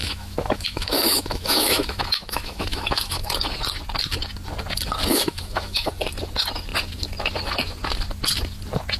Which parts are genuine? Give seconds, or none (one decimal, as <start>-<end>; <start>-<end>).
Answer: 3.3-5.1; 5.9-9.0